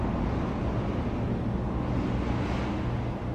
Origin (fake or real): real